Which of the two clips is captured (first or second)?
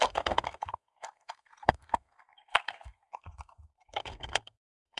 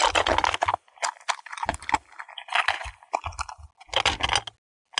second